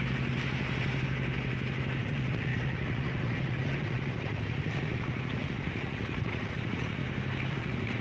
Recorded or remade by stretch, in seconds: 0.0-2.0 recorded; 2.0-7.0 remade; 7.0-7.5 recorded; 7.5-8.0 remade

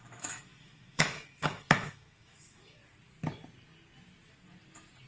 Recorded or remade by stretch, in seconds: 0.0-2.8 remade; 2.8-5.1 recorded